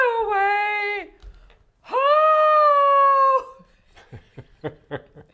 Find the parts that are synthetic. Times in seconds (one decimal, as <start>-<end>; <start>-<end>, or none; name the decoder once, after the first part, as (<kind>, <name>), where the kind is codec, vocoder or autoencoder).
none